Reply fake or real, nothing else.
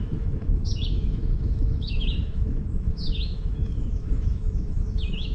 fake